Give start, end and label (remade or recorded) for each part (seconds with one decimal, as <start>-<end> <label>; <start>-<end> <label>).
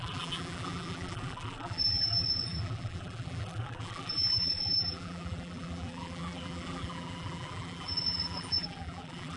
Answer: 0.0-9.4 remade